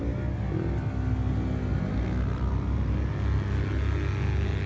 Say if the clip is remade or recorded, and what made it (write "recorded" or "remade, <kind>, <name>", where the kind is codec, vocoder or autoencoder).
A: recorded